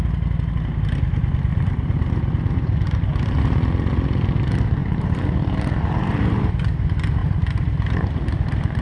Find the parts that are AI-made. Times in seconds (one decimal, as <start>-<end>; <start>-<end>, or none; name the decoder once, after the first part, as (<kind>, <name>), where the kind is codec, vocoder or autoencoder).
1.5-3.0 (vocoder, BigVGAN v2); 4.8-6.5; 7.2-8.8